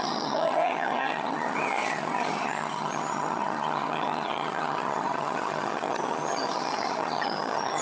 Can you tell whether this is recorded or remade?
remade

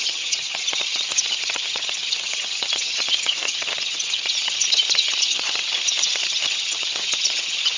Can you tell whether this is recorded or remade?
remade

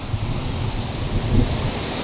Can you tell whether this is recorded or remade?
recorded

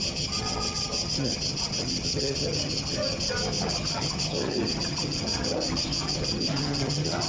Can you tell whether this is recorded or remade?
remade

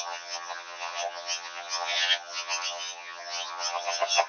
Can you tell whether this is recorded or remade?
remade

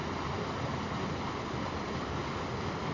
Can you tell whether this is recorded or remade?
recorded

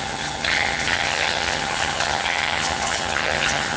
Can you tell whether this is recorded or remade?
remade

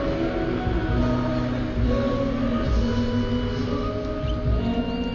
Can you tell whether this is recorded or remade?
recorded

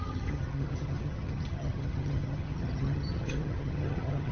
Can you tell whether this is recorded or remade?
remade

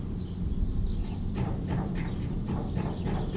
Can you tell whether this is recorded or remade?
recorded